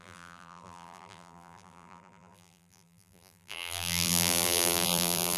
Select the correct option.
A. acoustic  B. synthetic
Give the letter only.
B